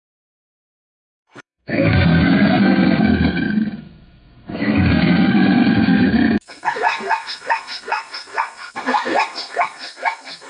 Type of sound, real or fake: fake